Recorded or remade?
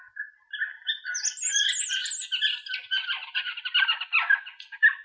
recorded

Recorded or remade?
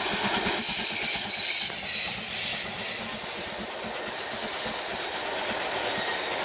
recorded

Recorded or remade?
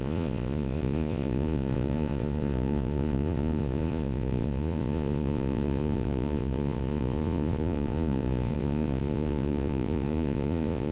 remade